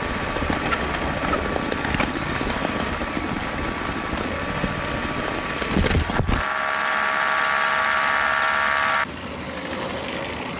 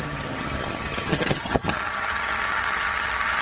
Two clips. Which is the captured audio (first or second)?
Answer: first